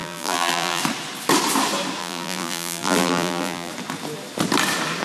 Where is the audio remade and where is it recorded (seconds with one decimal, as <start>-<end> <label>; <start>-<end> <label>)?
0.0-0.8 remade; 0.8-2.0 recorded; 2.0-3.7 remade; 3.7-5.0 recorded